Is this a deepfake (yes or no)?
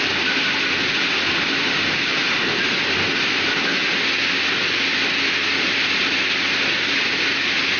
no